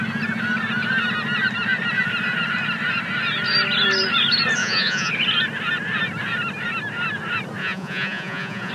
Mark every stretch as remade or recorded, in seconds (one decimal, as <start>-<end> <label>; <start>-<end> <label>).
0.0-4.6 recorded; 4.6-5.1 remade; 5.1-7.6 recorded; 7.6-8.7 remade